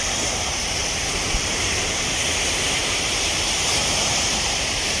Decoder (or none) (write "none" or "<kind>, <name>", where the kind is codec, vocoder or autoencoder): vocoder, BigVGAN v2